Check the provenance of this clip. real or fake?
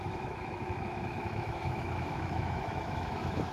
fake